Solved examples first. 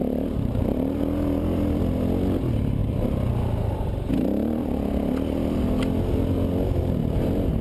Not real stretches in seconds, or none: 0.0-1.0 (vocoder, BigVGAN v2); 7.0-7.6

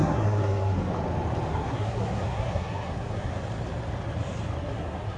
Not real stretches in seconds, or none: 0.0-0.9 (codec, SNAC); 1.5-3.3; 4.6-5.2

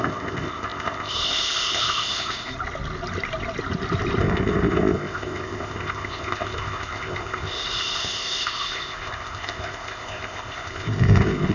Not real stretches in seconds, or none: 0.0-2.5 (codec, ZipCodec); 4.2-11.5

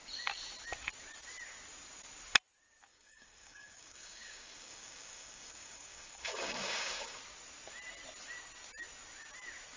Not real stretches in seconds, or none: 2.9-7.2 (codec, DAC)